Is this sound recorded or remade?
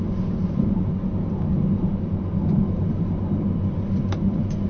recorded